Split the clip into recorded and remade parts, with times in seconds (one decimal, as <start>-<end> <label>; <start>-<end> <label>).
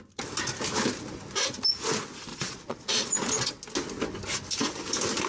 0.0-2.3 recorded; 2.3-3.5 remade; 3.5-5.3 recorded